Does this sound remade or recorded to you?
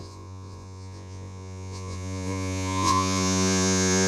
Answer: remade